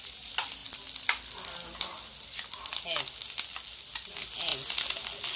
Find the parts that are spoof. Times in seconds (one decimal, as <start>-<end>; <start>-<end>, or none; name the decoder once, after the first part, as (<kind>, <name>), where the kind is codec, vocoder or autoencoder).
none